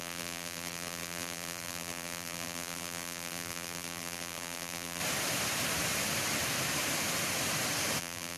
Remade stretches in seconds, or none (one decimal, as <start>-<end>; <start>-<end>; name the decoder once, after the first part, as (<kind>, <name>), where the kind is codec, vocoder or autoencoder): 0.0-5.0 (vocoder, BigVGAN v2); 8.0-8.4